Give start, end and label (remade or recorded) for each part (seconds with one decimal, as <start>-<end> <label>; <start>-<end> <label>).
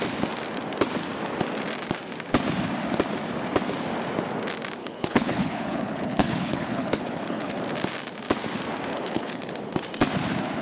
0.0-4.8 recorded; 4.8-7.6 remade; 7.6-8.9 recorded; 8.9-9.5 remade; 9.5-10.6 recorded